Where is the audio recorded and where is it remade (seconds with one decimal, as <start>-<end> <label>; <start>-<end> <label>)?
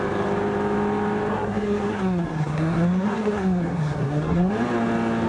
0.0-1.3 recorded; 1.3-4.5 remade; 4.5-5.3 recorded